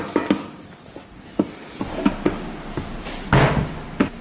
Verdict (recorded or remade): recorded